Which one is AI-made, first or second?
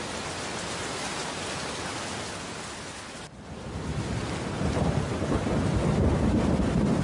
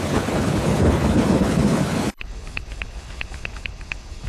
second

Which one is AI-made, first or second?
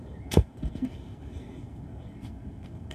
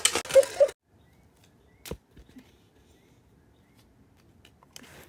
first